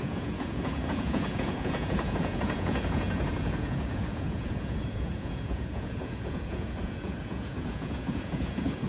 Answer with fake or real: fake